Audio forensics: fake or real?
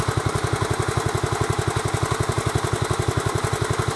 real